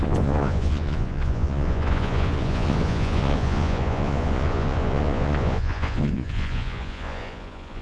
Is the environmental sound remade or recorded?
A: remade